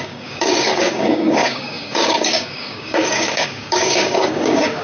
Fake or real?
fake